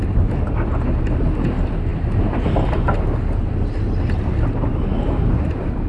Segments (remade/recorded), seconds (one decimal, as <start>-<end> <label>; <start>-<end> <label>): 0.0-5.9 recorded